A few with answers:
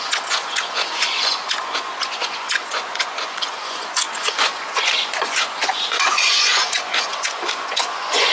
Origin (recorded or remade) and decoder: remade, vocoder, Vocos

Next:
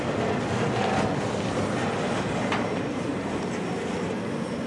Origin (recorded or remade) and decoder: recorded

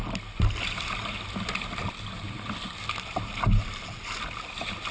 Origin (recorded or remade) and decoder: recorded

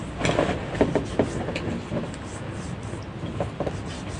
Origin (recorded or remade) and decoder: recorded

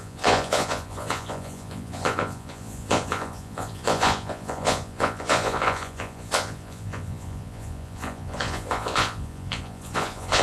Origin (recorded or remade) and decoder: remade, vocoder, Vocos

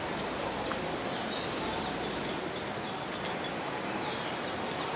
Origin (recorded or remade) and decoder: recorded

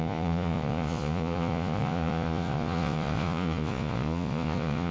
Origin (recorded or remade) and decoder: remade, vocoder, Vocos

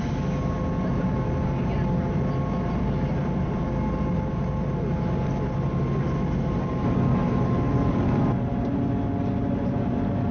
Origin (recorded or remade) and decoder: recorded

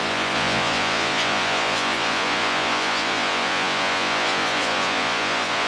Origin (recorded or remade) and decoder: remade, vocoder, Vocos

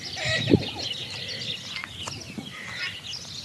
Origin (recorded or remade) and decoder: recorded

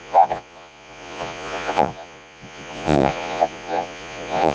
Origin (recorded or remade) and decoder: remade, vocoder, Vocos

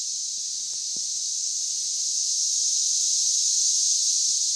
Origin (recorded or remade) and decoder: remade, vocoder, Vocos